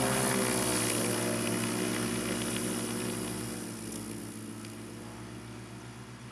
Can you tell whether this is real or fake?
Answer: real